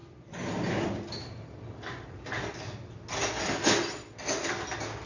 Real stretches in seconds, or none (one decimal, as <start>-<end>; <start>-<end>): 0.0-5.1